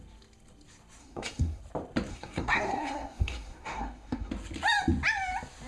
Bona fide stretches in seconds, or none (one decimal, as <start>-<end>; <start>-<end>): 0.0-1.0; 1.6-2.1; 4.3-5.7